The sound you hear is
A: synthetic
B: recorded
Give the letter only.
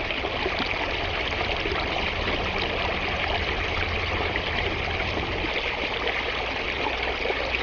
B